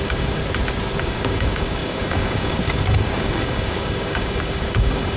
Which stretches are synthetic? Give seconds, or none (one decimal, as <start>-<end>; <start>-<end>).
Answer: 0.0-0.4; 1.0-5.2